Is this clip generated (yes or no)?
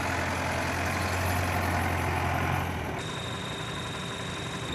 no